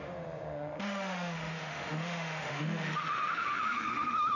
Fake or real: fake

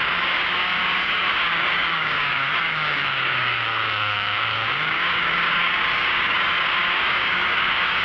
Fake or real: fake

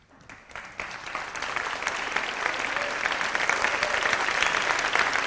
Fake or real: real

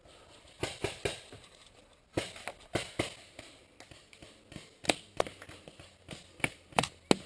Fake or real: real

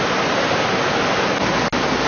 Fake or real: real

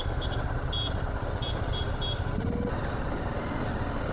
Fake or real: real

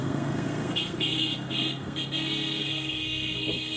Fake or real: fake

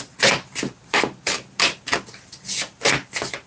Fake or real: real